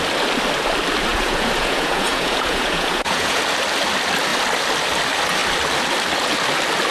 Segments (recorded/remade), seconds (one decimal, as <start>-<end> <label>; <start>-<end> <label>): 0.0-1.1 recorded; 1.1-3.4 remade; 3.4-6.9 recorded